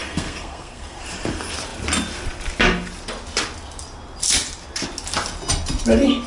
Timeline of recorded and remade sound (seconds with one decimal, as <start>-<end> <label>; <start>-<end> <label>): 0.0-1.0 remade; 1.0-6.3 recorded